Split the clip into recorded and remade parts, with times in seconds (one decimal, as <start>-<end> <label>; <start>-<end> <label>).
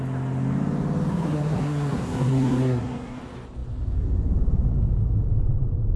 0.0-1.1 recorded; 1.1-3.2 remade; 3.2-6.0 recorded